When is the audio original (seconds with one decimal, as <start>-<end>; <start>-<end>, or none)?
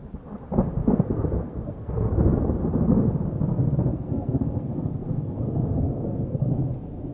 0.0-0.8; 2.1-3.9; 6.5-7.1